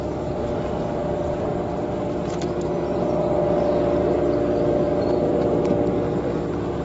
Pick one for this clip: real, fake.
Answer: real